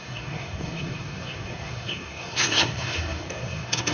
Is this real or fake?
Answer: fake